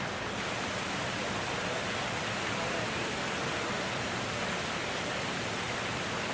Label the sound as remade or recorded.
recorded